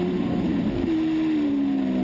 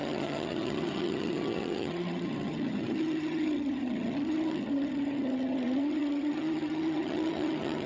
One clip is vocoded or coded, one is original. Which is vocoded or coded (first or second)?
second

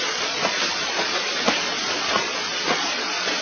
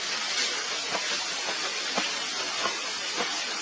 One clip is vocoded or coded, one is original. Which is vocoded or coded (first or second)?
first